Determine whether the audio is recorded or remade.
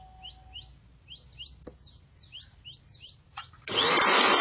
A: recorded